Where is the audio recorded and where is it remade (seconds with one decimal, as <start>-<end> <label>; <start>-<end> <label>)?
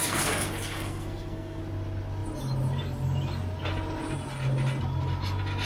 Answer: 0.0-1.6 remade; 1.6-5.7 recorded